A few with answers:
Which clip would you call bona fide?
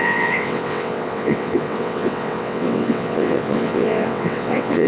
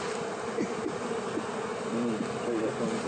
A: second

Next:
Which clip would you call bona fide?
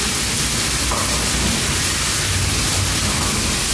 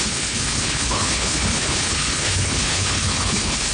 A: first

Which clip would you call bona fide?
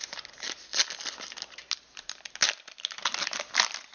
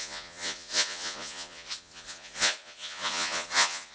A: first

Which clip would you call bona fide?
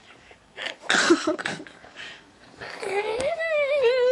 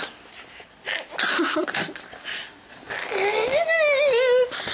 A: second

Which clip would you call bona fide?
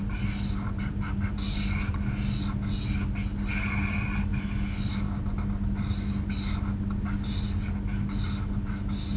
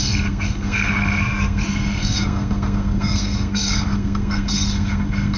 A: first